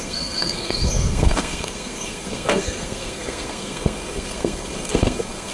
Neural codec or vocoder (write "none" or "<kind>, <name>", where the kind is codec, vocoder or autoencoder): codec, SNAC